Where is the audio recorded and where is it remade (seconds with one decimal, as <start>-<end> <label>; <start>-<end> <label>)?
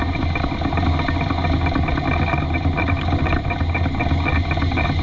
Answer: 0.0-5.0 recorded